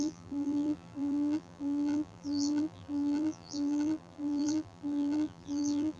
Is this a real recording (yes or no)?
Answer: no